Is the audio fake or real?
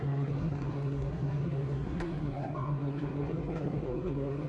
fake